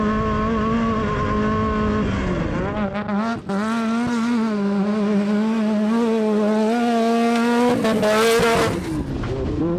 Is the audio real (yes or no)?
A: yes